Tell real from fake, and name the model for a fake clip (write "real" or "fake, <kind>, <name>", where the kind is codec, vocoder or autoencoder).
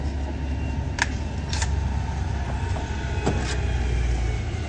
real